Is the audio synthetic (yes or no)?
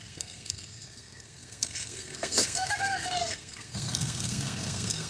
yes